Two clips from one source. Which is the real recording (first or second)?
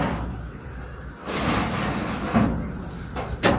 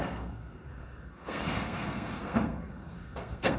first